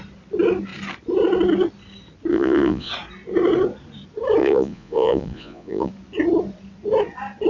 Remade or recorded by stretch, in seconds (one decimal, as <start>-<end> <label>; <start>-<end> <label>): 0.0-2.3 recorded; 2.3-2.9 remade; 2.9-4.4 recorded; 4.4-5.9 remade; 5.9-7.5 recorded